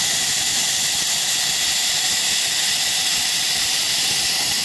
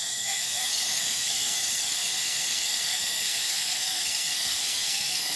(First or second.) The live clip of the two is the first